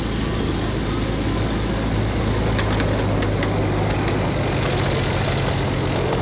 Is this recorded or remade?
recorded